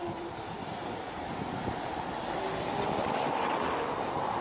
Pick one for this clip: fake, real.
real